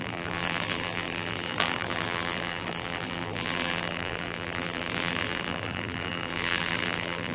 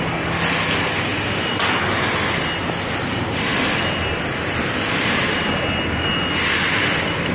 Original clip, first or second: second